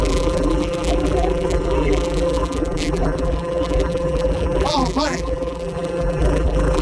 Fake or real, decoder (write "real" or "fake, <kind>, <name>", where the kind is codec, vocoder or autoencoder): fake, vocoder, BigVGAN v2